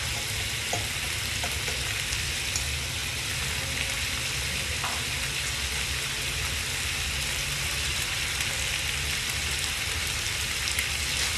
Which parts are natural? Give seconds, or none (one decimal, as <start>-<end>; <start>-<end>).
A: 0.0-11.4